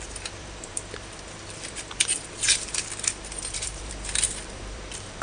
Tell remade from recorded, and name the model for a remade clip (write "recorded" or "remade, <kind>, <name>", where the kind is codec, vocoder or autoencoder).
remade, vocoder, BigVGAN v2